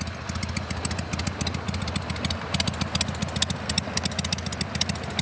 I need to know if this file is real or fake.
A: real